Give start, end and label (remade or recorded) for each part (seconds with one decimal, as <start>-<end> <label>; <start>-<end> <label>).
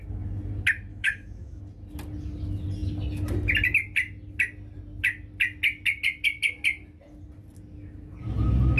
0.0-0.9 recorded; 0.9-1.6 remade; 1.6-8.8 recorded